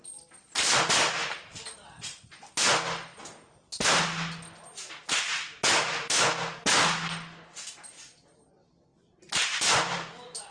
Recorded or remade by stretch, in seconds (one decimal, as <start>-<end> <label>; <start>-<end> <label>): 0.0-8.9 recorded; 8.9-10.5 remade